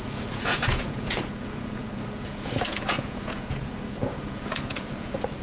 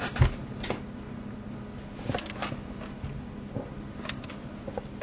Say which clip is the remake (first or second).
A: first